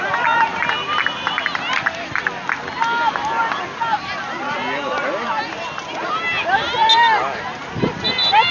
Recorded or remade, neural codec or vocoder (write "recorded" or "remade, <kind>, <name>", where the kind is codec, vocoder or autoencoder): recorded